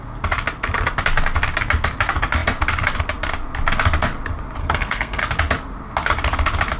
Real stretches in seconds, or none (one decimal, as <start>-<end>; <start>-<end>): 0.0-4.6; 5.2-6.8